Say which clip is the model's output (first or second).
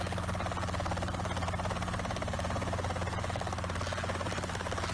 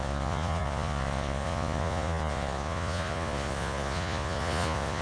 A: second